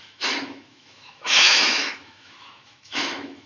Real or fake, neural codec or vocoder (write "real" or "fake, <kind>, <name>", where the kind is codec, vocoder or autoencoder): fake, autoencoder, DAC-VAE